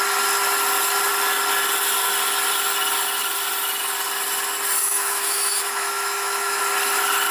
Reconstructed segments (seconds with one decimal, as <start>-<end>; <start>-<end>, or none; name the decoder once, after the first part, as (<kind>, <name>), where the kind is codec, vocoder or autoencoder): 4.8-6.6 (autoencoder, DAC-VAE)

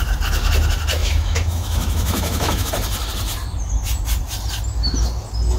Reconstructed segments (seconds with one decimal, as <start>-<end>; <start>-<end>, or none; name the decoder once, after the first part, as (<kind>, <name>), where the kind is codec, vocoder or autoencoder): 1.0-2.7 (autoencoder, DAC-VAE)

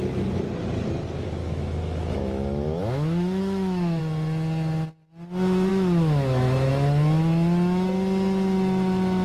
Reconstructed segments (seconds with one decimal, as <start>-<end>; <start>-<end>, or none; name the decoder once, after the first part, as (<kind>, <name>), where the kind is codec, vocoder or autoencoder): 1.4-4.0 (autoencoder, DAC-VAE); 5.7-6.7

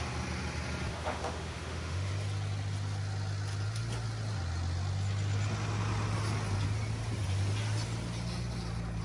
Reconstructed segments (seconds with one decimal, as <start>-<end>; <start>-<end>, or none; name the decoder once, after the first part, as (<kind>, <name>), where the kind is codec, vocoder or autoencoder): 0.9-2.1 (autoencoder, DAC-VAE)

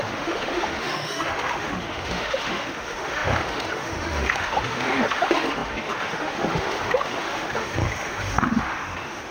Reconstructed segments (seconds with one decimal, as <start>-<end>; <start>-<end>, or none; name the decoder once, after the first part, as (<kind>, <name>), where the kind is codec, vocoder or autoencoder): 0.0-9.3 (autoencoder, DAC-VAE)

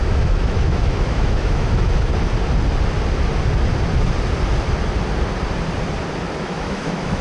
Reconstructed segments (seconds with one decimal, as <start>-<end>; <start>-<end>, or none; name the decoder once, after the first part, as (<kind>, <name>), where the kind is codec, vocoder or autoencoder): 0.0-2.1 (autoencoder, DAC-VAE); 6.4-7.2

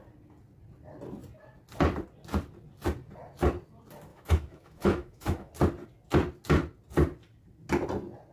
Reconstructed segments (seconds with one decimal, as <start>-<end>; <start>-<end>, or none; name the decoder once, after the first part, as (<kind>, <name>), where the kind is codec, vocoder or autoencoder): 4.1-5.5 (autoencoder, DAC-VAE)